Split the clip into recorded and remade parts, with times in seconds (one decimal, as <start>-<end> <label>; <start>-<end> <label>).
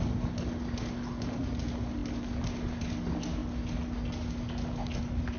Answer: 0.0-5.4 recorded